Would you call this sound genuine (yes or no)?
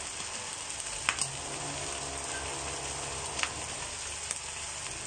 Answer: yes